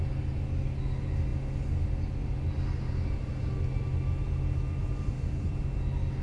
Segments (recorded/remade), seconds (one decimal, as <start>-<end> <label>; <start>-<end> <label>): 0.0-4.8 recorded; 4.8-5.5 remade; 5.5-6.2 recorded